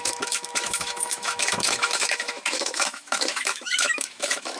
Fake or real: fake